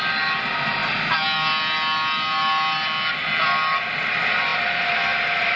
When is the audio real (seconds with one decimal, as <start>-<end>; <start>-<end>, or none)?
0.0-5.6